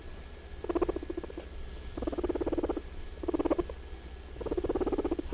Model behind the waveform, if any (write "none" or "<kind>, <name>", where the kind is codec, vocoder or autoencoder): none